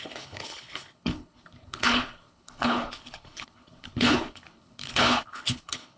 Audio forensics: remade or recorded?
remade